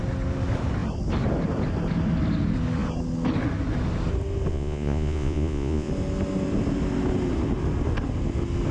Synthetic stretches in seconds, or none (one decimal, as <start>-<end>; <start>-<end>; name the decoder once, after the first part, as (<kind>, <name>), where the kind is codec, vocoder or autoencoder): 4.5-5.9 (vocoder, Vocos)

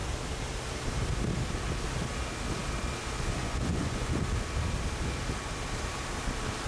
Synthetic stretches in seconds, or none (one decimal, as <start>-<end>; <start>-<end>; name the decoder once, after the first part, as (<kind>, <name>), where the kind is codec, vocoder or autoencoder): 3.4-4.2 (vocoder, Vocos)

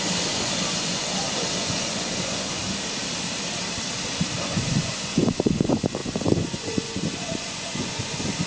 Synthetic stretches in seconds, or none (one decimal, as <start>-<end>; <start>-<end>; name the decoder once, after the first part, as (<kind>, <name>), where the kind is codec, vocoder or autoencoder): 0.0-2.6 (vocoder, Vocos); 4.4-8.5

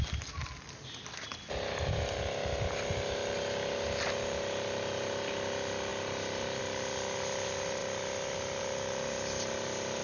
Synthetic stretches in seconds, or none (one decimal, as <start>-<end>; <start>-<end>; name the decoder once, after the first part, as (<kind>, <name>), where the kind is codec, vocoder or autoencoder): none

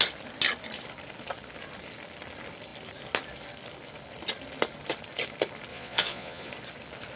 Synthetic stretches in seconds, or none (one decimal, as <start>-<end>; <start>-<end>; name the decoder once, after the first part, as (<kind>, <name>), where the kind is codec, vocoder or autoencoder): 5.7-6.5 (vocoder, Vocos)